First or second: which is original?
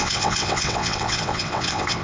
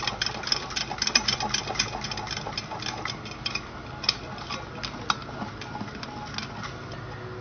second